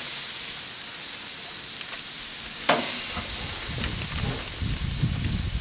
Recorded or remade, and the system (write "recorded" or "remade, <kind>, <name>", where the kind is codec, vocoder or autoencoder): recorded